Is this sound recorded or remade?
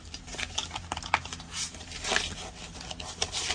recorded